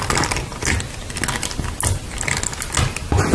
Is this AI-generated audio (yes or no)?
no